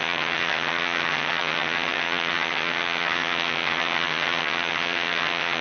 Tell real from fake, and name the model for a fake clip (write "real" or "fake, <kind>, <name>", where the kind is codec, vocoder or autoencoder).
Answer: fake, vocoder, HiFi-GAN